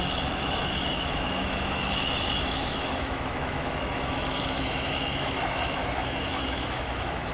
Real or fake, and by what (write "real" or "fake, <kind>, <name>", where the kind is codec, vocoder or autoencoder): fake, autoencoder, DAC-VAE